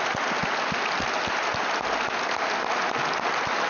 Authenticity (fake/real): real